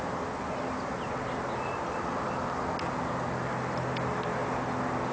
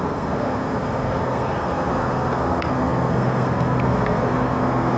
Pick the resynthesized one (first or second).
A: second